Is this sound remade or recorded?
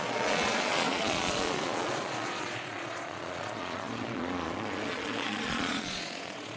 remade